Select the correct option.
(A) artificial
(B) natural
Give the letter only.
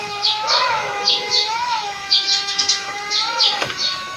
A